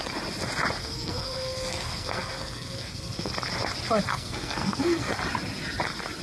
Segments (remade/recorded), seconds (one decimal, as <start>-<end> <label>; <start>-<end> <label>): 0.0-0.8 recorded; 0.8-3.3 remade; 3.3-4.1 recorded; 4.1-5.1 remade; 5.1-6.2 recorded